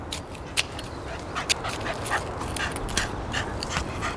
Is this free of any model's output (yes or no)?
yes